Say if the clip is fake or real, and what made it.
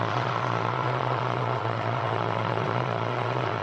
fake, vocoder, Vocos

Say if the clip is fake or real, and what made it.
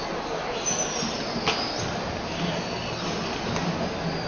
real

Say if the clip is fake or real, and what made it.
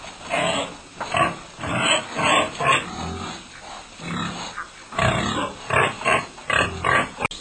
real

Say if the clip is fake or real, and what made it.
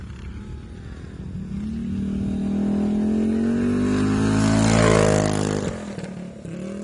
real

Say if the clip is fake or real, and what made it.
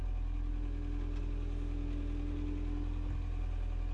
real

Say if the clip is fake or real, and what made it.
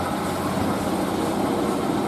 real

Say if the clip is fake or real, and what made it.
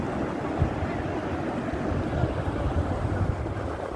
real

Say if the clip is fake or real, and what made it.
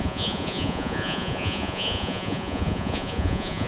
fake, vocoder, Vocos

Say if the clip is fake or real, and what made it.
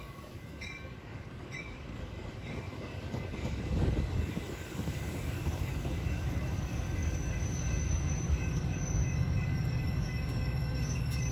fake, codec, DAC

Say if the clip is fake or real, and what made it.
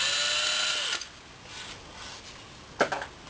real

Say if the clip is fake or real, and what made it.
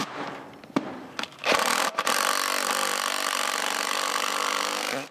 real